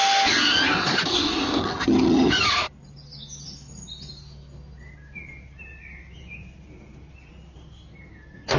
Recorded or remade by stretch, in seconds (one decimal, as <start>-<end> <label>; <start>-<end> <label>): 0.0-1.6 recorded; 1.6-2.5 remade; 2.5-8.6 recorded